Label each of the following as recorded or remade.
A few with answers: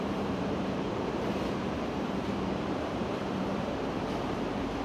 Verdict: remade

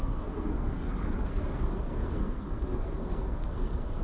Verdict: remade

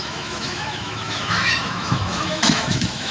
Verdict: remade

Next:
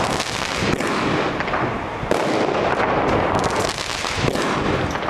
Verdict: recorded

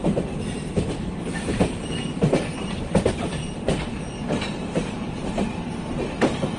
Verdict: remade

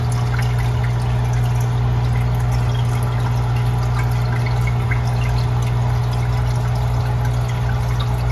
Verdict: recorded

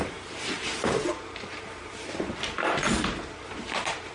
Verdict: remade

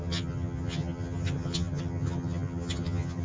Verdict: remade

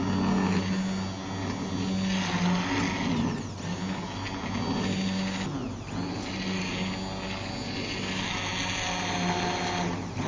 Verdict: recorded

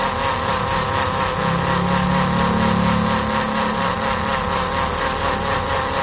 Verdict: recorded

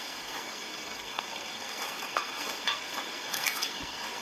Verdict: remade